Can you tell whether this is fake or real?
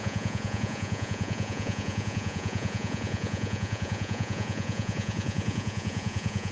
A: fake